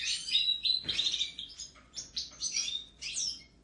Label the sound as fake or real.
fake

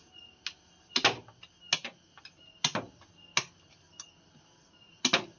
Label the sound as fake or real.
real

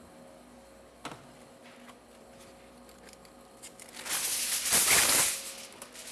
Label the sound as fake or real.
real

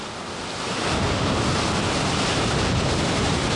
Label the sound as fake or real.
real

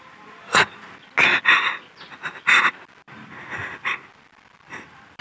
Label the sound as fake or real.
real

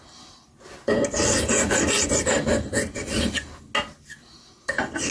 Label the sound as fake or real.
real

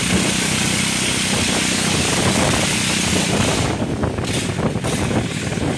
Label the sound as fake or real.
real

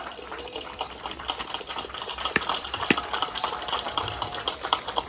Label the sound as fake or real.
fake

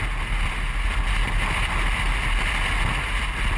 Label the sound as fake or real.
real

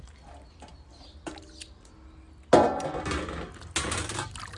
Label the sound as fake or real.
real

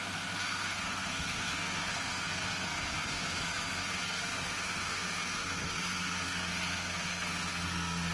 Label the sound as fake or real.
fake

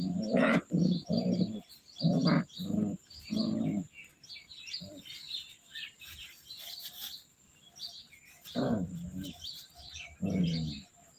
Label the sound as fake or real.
real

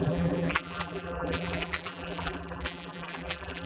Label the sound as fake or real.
fake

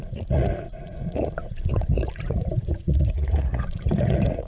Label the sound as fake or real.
fake